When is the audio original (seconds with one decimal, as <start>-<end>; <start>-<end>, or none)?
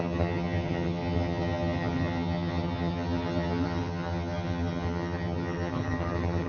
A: none